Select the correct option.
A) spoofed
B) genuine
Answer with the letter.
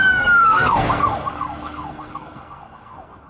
A